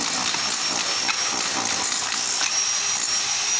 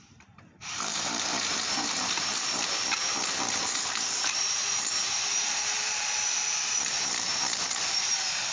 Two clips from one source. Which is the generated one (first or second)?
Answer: second